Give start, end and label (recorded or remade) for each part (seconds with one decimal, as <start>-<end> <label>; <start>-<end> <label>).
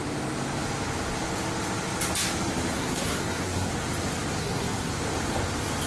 0.0-2.7 recorded; 2.7-3.7 remade; 3.7-4.4 recorded; 4.4-4.9 remade; 4.9-5.9 recorded